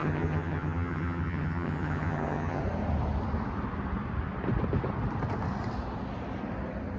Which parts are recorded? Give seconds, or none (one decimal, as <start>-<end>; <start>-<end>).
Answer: 2.6-7.0